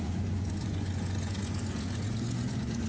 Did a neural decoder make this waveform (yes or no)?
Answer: yes